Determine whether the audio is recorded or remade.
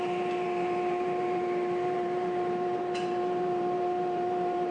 remade